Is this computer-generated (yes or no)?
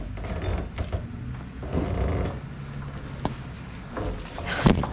no